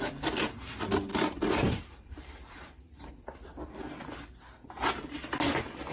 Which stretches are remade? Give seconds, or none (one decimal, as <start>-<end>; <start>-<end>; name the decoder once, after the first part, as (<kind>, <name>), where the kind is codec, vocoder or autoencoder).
1.1-3.1 (vocoder, BigVGAN v2)